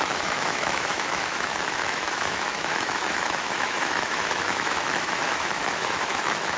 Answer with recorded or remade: remade